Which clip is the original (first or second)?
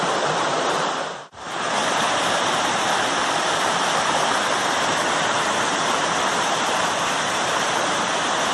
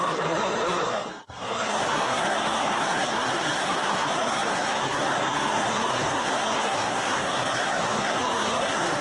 first